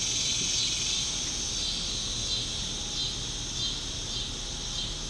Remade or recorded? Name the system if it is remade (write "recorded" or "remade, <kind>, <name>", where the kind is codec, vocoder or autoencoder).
recorded